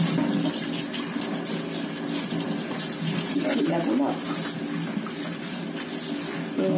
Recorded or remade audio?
recorded